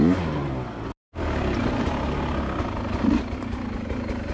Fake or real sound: real